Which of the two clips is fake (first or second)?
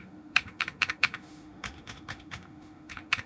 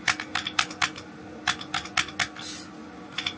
first